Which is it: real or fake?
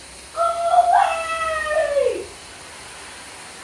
real